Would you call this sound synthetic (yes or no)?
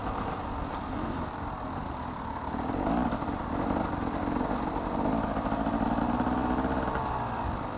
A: no